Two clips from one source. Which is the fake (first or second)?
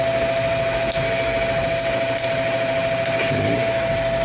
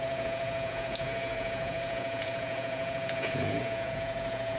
second